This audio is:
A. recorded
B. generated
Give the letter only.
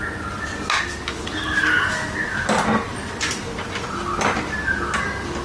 A